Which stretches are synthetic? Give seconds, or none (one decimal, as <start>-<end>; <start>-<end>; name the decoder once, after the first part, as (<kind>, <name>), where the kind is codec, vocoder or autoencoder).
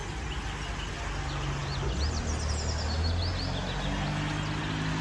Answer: none